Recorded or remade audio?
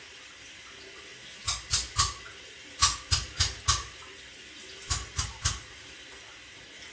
recorded